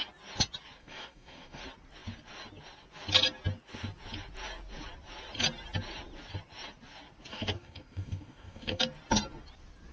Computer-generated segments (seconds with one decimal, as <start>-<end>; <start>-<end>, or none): 0.8-1.6; 7.3-8.8